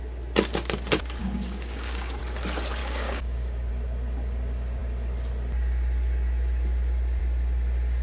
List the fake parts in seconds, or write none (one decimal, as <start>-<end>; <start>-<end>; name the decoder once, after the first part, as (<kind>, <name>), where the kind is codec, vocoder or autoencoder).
1.2-2.2 (codec, DAC); 2.8-3.7